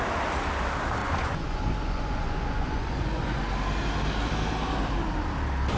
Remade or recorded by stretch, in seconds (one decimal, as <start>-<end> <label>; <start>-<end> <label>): 0.0-1.0 recorded; 1.0-3.4 remade; 3.4-5.8 recorded